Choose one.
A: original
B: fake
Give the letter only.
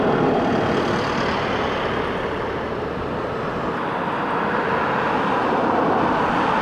A